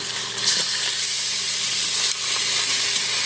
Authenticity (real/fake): fake